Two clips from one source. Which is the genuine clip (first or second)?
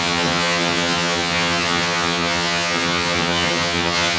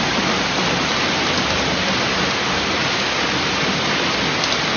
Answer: second